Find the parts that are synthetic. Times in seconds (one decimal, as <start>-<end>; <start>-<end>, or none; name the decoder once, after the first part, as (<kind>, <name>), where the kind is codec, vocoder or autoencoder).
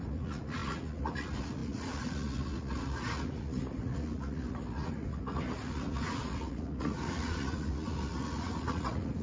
0.0-9.2 (vocoder, Vocos)